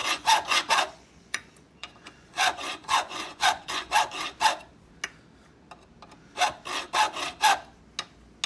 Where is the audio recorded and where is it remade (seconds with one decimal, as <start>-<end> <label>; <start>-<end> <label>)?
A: 0.0-3.9 remade; 3.9-8.5 recorded